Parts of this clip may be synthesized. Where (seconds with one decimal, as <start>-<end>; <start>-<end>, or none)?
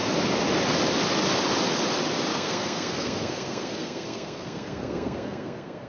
2.3-5.9